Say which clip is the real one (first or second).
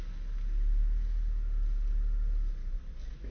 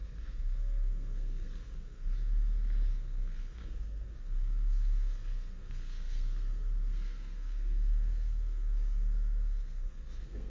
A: first